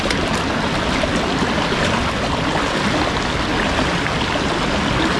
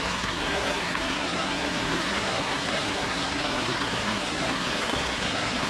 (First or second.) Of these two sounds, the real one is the first